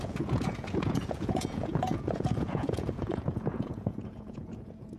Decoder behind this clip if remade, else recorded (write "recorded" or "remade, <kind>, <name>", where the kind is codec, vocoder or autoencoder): remade, vocoder, Vocos